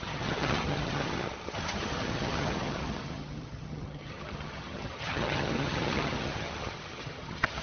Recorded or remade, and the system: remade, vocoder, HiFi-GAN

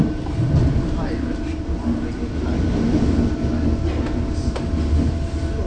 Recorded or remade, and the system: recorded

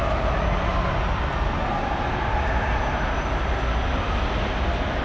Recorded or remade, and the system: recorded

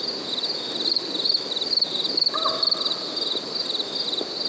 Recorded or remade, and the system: recorded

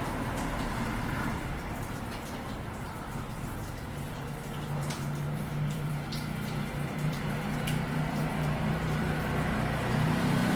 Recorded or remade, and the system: remade, vocoder, BigVGAN v2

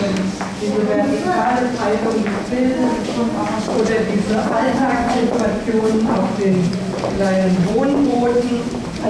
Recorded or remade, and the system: recorded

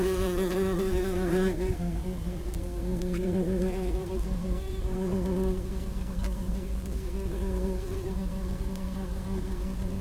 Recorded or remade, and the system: remade, codec, SNAC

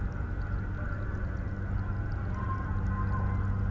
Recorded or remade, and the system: recorded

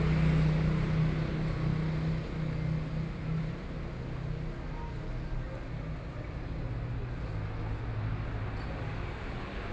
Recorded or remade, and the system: recorded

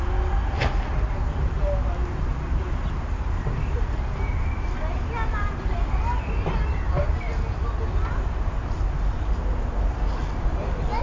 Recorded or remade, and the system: recorded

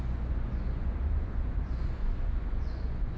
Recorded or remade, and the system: remade, vocoder, Vocos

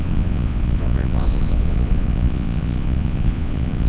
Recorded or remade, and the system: remade, vocoder, Vocos